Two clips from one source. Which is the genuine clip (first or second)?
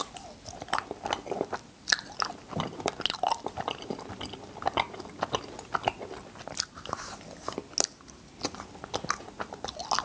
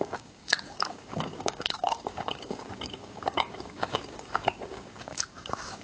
first